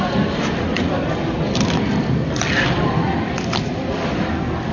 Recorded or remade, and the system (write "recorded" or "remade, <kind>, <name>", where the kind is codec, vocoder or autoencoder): recorded